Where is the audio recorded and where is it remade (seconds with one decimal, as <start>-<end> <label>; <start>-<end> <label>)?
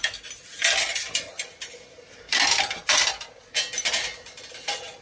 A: 0.0-5.0 recorded